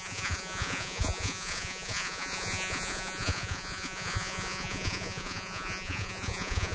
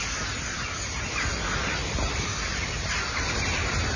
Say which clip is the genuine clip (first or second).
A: second